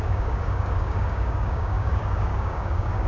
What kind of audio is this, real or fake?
fake